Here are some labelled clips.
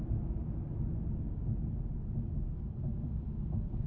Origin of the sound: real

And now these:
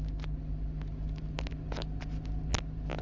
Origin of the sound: real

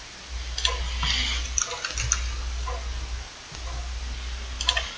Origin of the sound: real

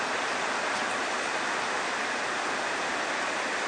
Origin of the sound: real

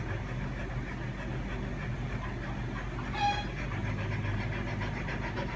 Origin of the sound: real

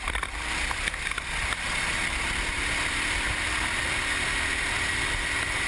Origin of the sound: real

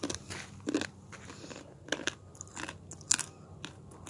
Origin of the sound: real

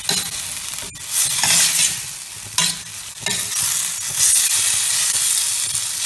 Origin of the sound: real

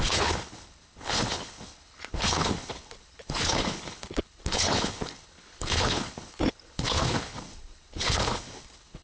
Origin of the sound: fake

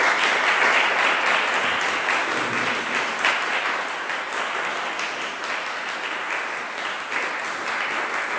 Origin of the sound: real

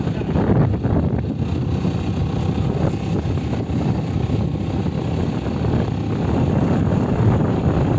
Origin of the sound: real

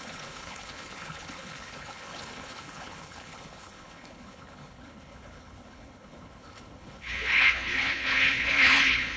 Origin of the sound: fake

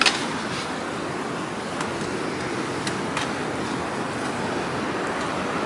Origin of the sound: real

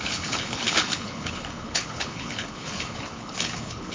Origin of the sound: fake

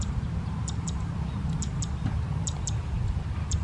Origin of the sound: real